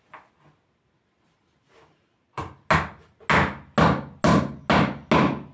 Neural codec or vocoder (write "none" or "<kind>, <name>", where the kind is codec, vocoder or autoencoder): none